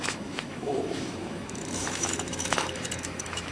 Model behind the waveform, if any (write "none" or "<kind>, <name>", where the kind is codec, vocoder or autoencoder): autoencoder, DAC-VAE